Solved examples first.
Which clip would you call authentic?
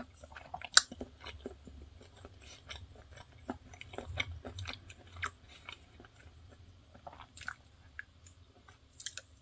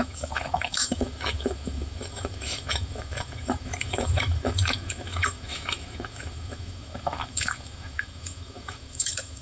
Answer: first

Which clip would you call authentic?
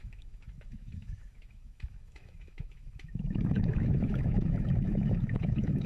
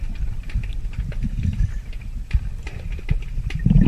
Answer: second